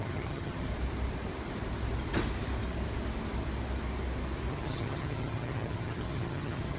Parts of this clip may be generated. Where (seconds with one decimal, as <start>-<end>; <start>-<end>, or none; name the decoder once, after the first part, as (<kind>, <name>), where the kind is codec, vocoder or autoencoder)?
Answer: 0.0-0.7 (vocoder, HiFi-GAN); 4.5-6.8